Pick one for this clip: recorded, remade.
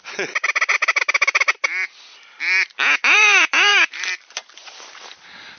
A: remade